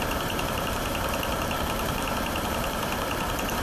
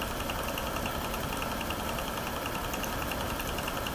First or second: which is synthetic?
first